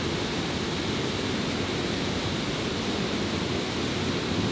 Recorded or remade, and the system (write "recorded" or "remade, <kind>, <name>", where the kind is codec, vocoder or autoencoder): recorded